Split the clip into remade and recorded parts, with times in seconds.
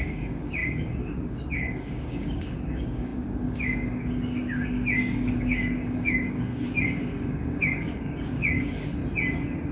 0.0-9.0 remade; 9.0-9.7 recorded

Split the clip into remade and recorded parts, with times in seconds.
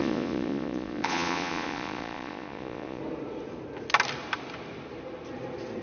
0.0-3.0 remade; 3.0-5.8 recorded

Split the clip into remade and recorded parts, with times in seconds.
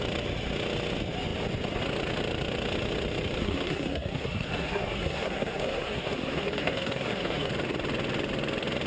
0.0-3.4 recorded; 3.4-7.5 remade; 7.5-8.9 recorded